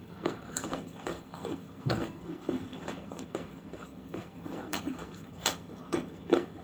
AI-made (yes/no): yes